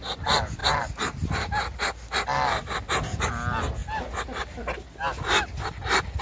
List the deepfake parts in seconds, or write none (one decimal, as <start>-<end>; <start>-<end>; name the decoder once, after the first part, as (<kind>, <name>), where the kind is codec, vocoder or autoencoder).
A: none